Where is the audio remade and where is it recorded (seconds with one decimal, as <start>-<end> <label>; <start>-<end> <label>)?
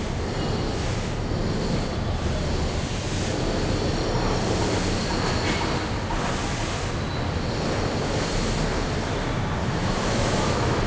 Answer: 0.0-9.6 recorded; 9.6-10.9 remade